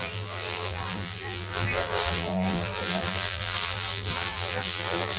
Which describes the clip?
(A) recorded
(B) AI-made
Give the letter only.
B